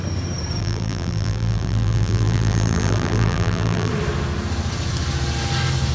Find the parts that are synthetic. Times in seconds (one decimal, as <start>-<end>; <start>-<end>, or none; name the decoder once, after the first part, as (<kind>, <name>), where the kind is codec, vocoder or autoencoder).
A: 0.6-3.9 (vocoder, BigVGAN v2)